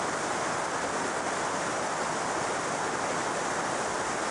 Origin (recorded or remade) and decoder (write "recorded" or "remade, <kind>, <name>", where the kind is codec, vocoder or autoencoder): recorded